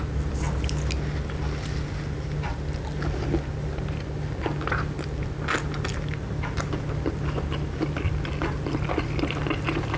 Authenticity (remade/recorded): recorded